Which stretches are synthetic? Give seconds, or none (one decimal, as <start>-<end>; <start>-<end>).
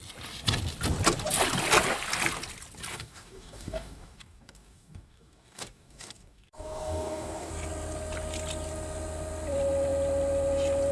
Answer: 2.9-7.5